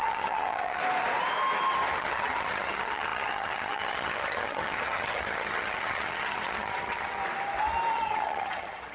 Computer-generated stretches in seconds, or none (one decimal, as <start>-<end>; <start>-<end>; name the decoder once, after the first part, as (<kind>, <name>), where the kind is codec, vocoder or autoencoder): 0.0-0.8 (vocoder, HiFi-GAN); 2.0-7.2; 7.9-8.9